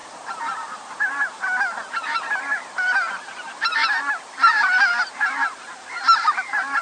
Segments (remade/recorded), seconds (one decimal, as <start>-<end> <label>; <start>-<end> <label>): 0.0-0.9 recorded; 0.9-6.8 remade